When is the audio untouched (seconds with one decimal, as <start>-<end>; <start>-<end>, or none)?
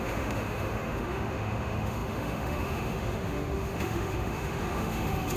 none